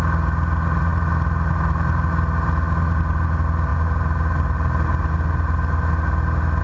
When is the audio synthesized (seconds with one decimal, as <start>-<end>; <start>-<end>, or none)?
none